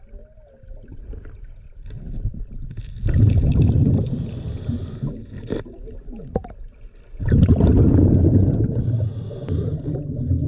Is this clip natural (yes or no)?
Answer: yes